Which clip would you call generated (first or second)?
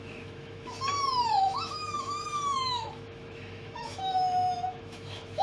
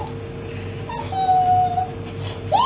first